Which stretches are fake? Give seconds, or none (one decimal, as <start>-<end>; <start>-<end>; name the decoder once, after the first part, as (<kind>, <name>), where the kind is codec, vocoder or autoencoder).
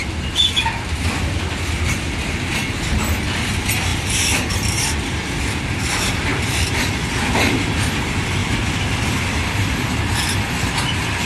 3.9-5.7 (vocoder, BigVGAN v2); 6.3-7.0; 8.4-9.5